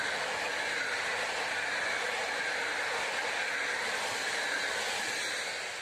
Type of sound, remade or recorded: recorded